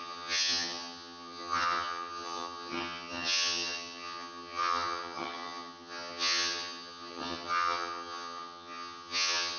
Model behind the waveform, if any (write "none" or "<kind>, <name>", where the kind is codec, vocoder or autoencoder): vocoder, HiFi-GAN